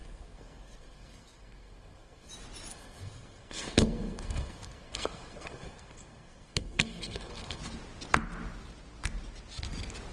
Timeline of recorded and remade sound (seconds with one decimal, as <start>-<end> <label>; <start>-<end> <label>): 0.0-2.3 remade; 2.3-2.7 recorded; 2.7-7.6 remade; 7.6-10.1 recorded